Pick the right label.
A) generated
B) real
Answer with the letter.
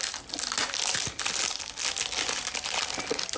B